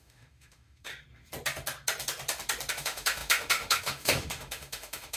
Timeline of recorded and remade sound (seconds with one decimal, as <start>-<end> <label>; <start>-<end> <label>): 0.0-0.9 remade; 0.9-2.7 recorded; 2.7-5.2 remade